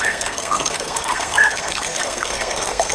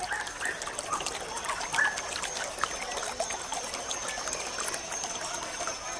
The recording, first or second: second